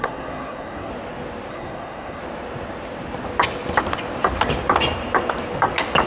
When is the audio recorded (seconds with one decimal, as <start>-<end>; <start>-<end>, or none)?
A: 0.9-1.5; 2.2-6.1